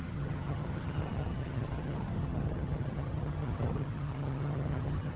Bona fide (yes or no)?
no